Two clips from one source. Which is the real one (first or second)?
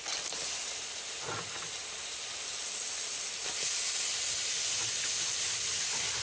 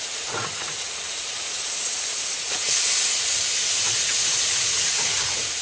first